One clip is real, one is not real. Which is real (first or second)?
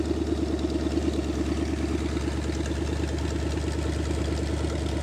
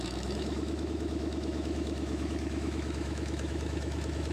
first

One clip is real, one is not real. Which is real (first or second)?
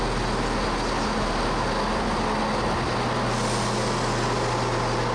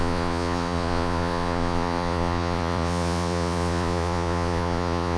first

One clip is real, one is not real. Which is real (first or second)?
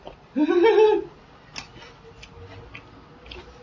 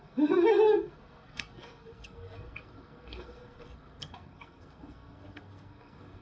first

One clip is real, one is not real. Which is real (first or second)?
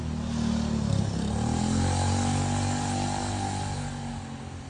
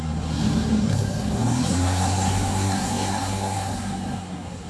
first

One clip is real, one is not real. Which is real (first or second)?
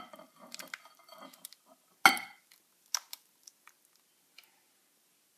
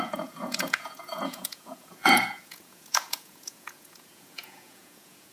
first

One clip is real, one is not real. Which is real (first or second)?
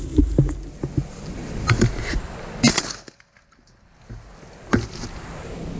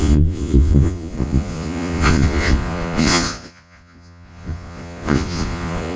first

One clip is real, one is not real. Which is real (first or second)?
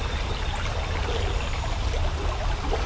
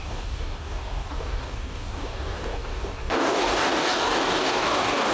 first